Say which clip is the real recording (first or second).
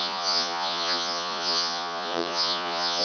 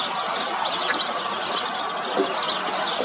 second